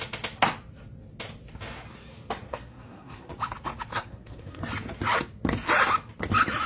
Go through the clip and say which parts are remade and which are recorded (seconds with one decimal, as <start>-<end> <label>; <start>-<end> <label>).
0.0-2.5 recorded; 2.5-3.3 remade; 3.3-3.9 recorded; 3.9-4.6 remade; 4.6-6.7 recorded